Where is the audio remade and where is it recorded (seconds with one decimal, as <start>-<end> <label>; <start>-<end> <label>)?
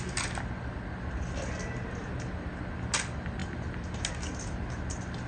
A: 0.0-5.3 recorded